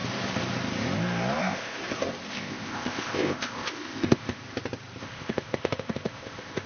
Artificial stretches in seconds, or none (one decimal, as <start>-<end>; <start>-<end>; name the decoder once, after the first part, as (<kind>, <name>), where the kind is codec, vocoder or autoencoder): 1.4-1.8 (codec, ZipCodec); 2.3-4.4; 5.0-6.7